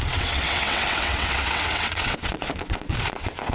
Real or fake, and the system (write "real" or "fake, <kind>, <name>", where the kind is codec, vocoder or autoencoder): fake, vocoder, WaveNeXt